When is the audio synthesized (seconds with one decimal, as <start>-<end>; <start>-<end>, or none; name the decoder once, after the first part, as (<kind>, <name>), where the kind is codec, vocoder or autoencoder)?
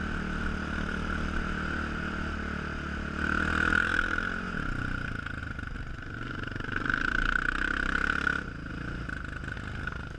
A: none